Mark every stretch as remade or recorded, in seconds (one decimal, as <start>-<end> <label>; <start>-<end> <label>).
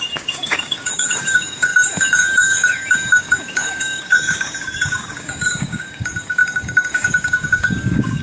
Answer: 0.0-8.2 remade